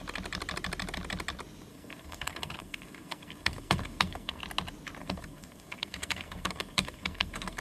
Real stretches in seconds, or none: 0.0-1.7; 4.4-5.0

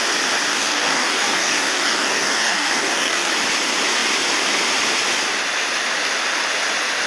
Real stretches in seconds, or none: 0.0-0.5; 3.3-7.1

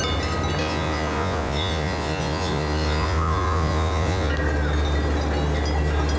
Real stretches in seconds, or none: 0.0-0.6; 4.3-6.2

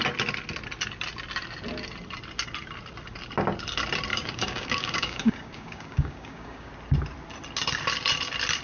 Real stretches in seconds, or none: 0.0-4.1; 6.7-8.6

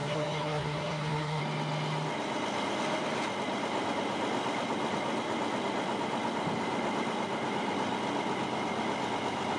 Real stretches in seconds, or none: 1.4-9.6

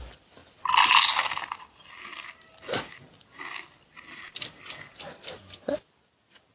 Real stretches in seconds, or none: 0.0-6.5